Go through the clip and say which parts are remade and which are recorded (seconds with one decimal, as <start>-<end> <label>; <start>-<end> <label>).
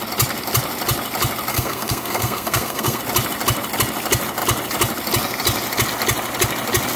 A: 0.0-1.5 recorded; 1.5-3.0 remade; 3.0-7.0 recorded